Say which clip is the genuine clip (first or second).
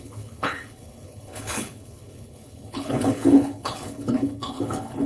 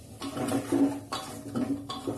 second